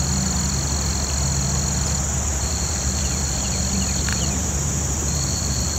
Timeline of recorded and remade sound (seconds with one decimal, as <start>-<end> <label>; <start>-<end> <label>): 0.0-2.3 recorded; 2.3-3.6 remade; 3.6-4.1 recorded; 4.1-5.8 remade